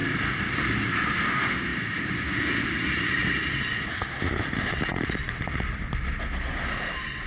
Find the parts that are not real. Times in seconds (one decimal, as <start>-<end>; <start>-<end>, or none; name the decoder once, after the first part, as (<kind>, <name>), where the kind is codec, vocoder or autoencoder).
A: 0.0-1.1 (vocoder, BigVGAN v2); 4.9-5.8